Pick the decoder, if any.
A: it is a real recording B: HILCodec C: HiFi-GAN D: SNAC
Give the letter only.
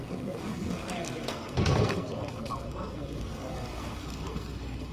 D